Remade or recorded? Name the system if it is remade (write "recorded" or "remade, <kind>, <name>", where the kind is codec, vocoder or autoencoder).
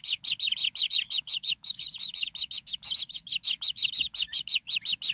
remade, autoencoder, DAC-VAE